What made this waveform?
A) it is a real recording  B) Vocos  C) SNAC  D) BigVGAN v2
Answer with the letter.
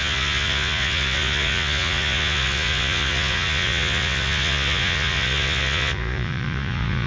B